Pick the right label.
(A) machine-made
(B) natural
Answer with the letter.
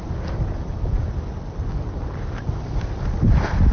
A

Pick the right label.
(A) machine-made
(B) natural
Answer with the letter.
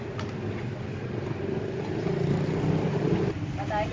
B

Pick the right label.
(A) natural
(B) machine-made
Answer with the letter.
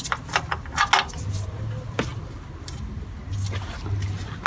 A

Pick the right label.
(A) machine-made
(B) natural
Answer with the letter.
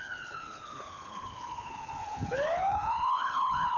A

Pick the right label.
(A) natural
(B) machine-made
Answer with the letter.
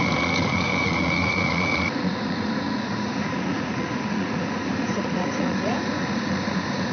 B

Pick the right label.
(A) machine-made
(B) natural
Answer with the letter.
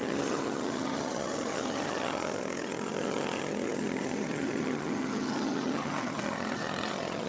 A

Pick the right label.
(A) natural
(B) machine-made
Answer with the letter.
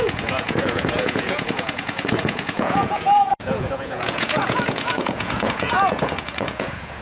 B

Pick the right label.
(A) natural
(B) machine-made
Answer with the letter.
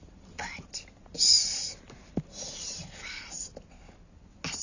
A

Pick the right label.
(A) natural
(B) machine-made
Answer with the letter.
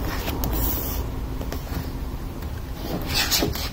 A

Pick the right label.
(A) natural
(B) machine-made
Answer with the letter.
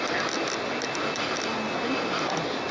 A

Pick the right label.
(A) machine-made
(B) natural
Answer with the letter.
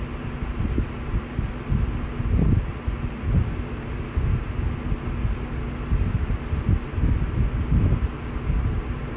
B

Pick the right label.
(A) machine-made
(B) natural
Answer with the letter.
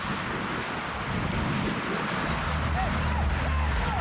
B